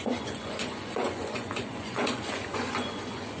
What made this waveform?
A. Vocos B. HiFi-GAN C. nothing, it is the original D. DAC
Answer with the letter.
A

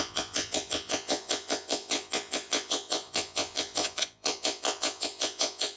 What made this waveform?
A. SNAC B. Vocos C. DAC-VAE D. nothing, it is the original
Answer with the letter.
B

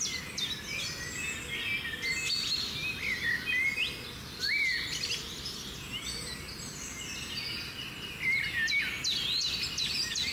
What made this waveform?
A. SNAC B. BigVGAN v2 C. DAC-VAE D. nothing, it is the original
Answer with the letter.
D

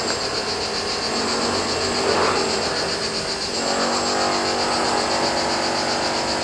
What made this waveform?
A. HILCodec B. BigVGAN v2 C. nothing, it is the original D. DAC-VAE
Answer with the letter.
C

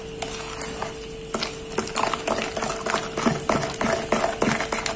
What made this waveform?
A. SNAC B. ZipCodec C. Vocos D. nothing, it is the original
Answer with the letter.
D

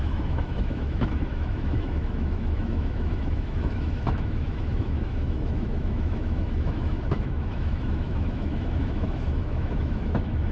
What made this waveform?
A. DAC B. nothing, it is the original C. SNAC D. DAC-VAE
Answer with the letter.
D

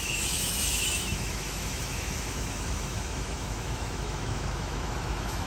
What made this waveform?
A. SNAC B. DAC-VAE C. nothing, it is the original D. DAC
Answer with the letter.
B